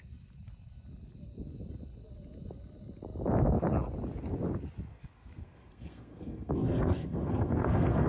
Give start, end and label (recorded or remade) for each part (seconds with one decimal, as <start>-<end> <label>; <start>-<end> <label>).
0.0-4.9 recorded; 4.9-8.1 remade